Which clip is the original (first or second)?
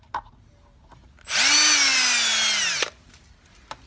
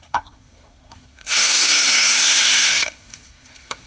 first